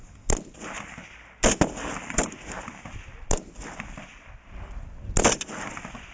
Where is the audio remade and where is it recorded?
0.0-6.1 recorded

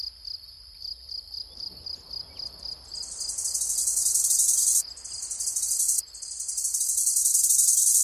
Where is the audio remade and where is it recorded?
0.0-8.0 recorded

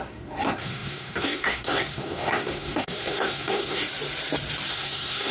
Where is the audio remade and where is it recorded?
0.0-3.8 remade; 3.8-4.7 recorded; 4.7-5.3 remade

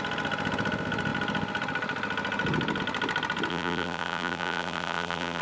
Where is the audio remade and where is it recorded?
0.0-3.5 recorded; 3.5-5.4 remade

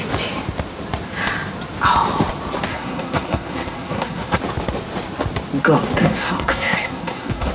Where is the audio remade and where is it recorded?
0.0-2.7 recorded; 2.7-4.4 remade; 4.4-6.0 recorded; 6.0-7.5 remade

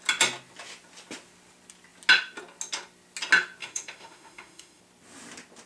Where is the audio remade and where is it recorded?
0.0-3.6 recorded; 3.6-4.8 remade; 4.8-5.7 recorded